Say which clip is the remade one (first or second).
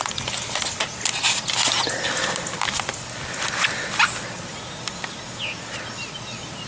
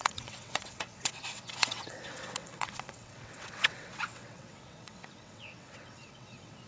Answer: second